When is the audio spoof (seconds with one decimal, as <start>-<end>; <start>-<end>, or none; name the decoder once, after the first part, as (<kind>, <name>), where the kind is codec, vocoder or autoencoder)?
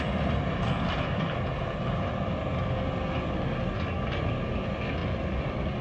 none